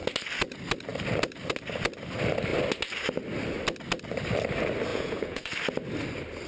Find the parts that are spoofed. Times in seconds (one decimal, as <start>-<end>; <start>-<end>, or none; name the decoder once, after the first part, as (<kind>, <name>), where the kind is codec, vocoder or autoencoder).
4.9-5.5 (vocoder, Vocos)